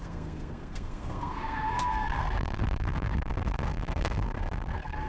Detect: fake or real fake